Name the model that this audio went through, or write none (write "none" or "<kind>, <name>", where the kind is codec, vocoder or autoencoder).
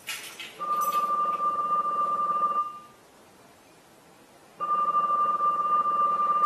none